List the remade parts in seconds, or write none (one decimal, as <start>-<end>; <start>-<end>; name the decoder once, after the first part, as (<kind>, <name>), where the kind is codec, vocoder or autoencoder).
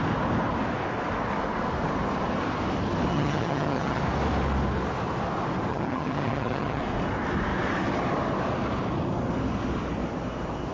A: 3.1-4.0 (vocoder, HiFi-GAN); 5.7-6.8